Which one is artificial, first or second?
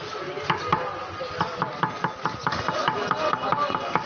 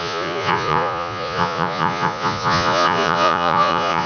second